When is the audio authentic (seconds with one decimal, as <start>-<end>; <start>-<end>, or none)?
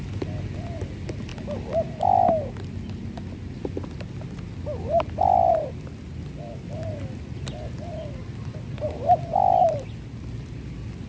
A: 0.0-11.1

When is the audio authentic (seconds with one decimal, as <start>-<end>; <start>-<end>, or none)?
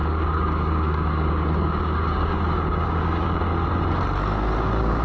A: 3.5-4.6